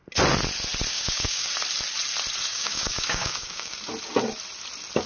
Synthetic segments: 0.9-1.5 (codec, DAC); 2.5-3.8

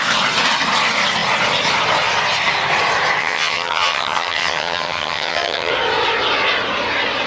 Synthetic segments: 3.2-5.7 (vocoder, HiFi-GAN)

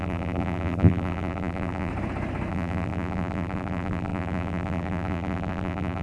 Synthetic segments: 0.0-1.9 (vocoder, BigVGAN v2); 2.5-6.0

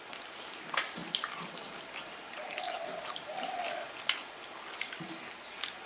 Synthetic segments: none

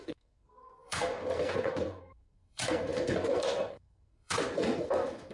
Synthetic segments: 0.0-5.3 (codec, SNAC)

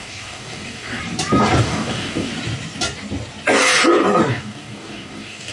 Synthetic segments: 0.0-1.0 (codec, DAC); 1.6-2.3; 4.3-5.5

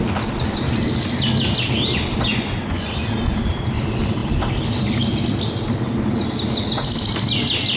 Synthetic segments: 2.3-2.9 (vocoder, Vocos)

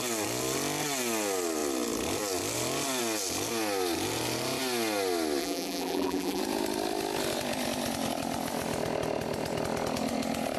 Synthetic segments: 5.4-6.4 (vocoder, BigVGAN v2)